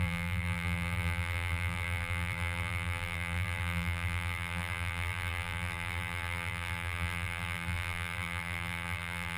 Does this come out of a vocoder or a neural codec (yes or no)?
yes